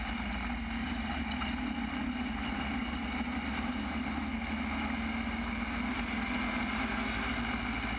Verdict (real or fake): real